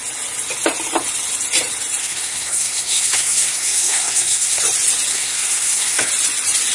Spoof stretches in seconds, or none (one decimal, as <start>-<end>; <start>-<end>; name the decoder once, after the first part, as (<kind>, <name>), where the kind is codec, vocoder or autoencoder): 2.0-4.6 (codec, SNAC); 5.1-6.1